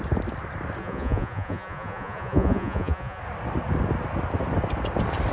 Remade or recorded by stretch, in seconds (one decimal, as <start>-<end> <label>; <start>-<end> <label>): 0.0-0.8 recorded; 0.8-3.2 remade; 3.2-5.3 recorded